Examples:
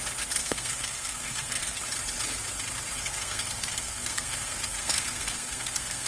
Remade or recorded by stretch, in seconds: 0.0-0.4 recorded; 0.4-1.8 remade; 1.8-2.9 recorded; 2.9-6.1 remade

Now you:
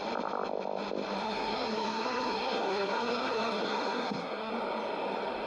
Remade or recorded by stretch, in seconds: 0.0-1.2 recorded; 1.2-4.5 remade; 4.5-5.5 recorded

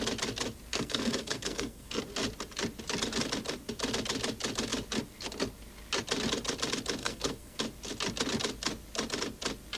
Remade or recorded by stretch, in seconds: 0.0-0.7 recorded; 0.7-2.0 remade; 2.0-7.0 recorded; 7.0-7.6 remade; 7.6-9.8 recorded

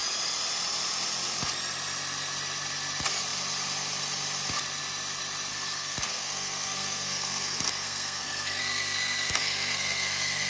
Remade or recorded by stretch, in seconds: 0.0-5.5 recorded; 5.5-10.5 remade

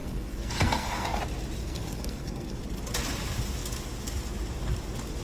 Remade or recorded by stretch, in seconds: 0.0-1.2 remade; 1.2-1.6 recorded; 1.6-2.6 remade; 2.6-5.2 recorded

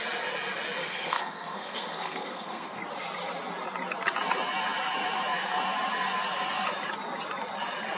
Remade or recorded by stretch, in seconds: 0.0-0.8 recorded; 0.8-2.8 remade; 2.8-8.0 recorded

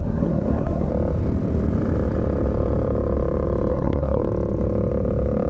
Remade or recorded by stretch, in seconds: 0.0-0.9 remade; 0.9-3.7 recorded; 3.7-4.2 remade; 4.2-5.5 recorded

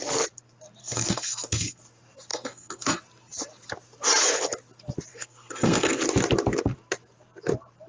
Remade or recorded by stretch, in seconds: 0.0-0.8 recorded; 0.8-1.8 remade; 1.8-2.3 recorded; 2.3-3.0 remade; 3.0-5.1 recorded; 5.1-6.0 remade; 6.0-7.9 recorded